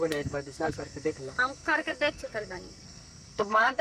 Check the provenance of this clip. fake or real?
fake